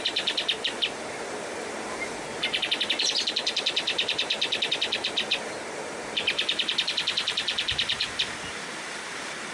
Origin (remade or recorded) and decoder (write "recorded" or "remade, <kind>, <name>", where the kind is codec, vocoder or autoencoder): remade, vocoder, BigVGAN v2